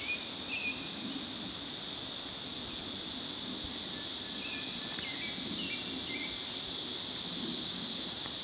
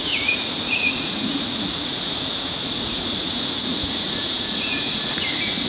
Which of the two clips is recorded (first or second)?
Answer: first